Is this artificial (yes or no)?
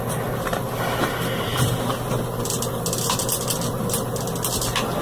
no